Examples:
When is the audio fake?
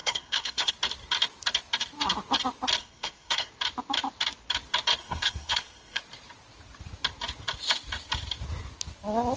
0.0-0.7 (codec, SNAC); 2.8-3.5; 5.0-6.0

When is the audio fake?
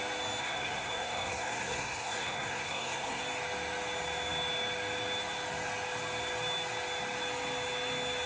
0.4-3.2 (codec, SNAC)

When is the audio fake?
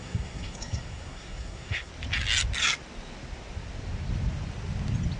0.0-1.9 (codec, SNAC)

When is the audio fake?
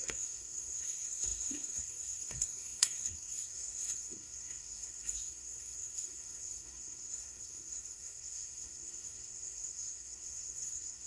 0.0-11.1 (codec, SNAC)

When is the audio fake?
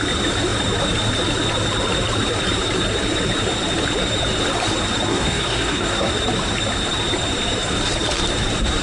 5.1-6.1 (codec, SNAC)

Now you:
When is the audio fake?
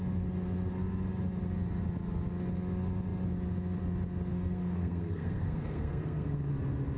4.3-6.5 (codec, SNAC)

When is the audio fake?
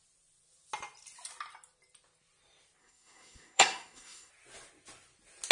2.8-4.3 (codec, SNAC)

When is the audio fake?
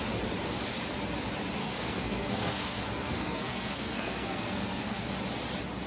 1.6-5.1 (codec, SNAC)